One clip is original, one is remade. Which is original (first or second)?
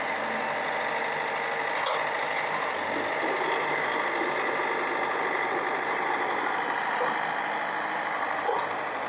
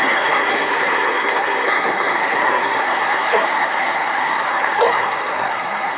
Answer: first